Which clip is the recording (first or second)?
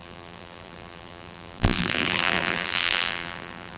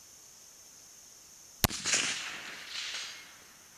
second